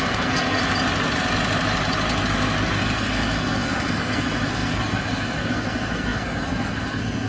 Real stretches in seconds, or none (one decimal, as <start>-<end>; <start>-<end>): 0.6-2.8

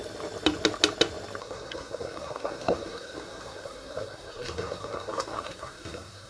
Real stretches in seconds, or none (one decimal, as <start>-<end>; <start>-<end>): 0.0-1.4